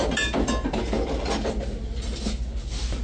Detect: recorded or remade recorded